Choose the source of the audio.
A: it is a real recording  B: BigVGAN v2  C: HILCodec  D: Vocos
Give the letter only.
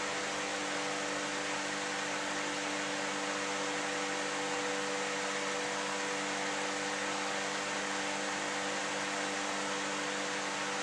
A